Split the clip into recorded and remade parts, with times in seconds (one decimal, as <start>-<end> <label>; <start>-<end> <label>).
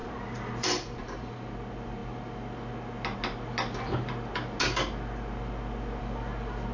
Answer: 0.0-1.3 remade; 1.3-6.7 recorded